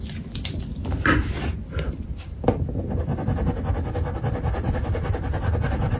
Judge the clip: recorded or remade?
recorded